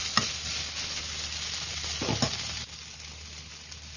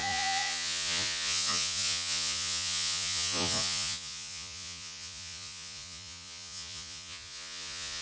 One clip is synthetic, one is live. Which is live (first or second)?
first